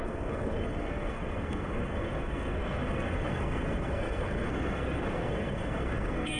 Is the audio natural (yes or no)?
no